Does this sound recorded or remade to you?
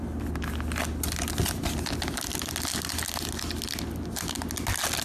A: recorded